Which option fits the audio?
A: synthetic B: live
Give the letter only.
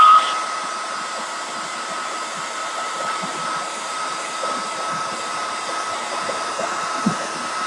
A